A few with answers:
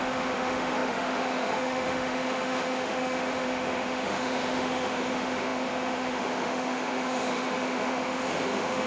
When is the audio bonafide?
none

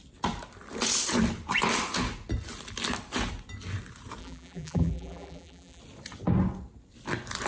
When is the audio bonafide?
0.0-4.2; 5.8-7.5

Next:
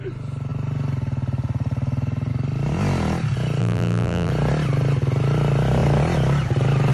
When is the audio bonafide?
0.0-3.6; 4.3-6.9

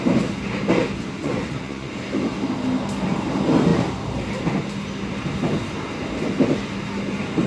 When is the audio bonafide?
0.0-1.2; 1.9-7.5

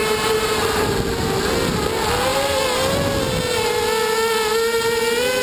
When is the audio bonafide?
0.8-5.4

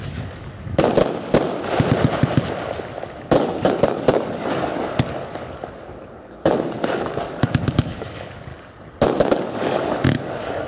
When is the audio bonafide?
0.9-3.2; 8.5-9.4

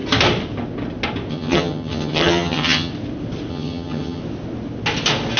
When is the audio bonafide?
0.0-1.3; 2.9-3.5; 4.2-5.4

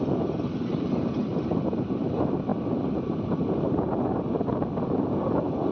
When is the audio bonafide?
0.0-5.7